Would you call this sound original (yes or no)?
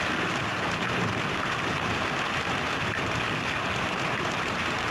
no